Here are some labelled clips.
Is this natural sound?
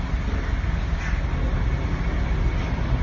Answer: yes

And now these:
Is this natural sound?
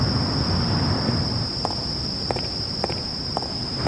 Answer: yes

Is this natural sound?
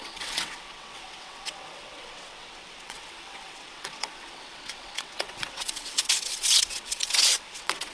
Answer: no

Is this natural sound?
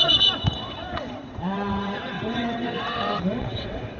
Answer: no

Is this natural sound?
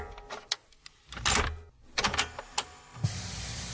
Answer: yes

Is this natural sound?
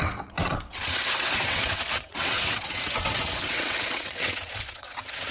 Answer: no